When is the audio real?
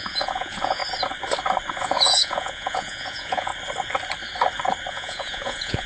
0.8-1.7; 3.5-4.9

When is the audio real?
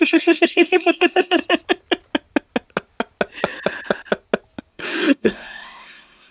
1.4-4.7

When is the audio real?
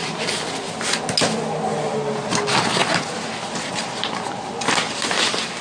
0.0-5.6